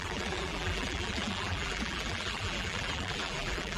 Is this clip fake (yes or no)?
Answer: yes